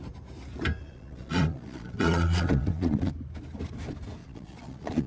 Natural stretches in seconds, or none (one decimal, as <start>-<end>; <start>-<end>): 0.0-0.8; 3.1-4.2